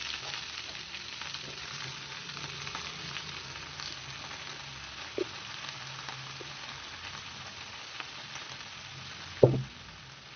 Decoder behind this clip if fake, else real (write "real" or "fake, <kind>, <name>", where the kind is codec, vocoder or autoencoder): real